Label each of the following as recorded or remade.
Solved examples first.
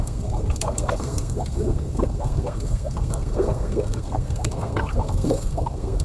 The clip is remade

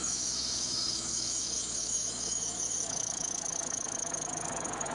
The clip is remade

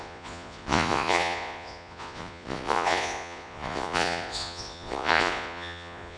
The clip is remade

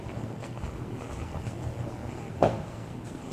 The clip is remade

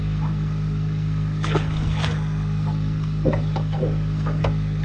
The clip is remade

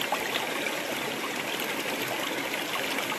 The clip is recorded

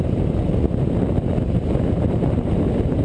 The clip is remade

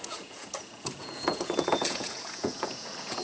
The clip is remade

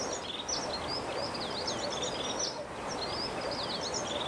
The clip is recorded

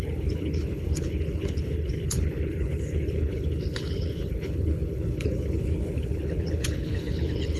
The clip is remade